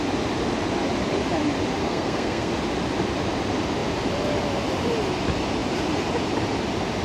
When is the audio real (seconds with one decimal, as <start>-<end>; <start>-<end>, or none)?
0.0-1.8; 2.5-7.0